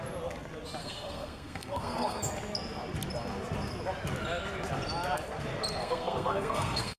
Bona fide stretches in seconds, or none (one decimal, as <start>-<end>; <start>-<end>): 0.0-0.8; 2.3-5.8

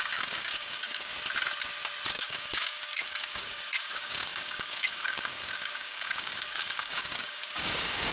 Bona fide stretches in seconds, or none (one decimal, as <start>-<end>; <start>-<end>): 1.1-2.1